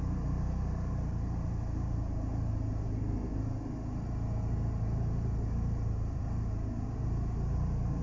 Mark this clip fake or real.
fake